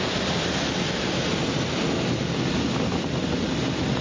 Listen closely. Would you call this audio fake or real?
real